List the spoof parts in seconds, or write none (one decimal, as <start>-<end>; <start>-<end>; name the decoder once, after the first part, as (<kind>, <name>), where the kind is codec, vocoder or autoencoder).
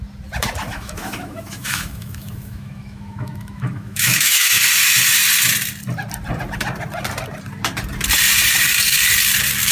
0.7-4.6 (autoencoder, DAC-VAE)